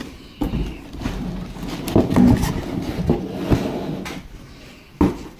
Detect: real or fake real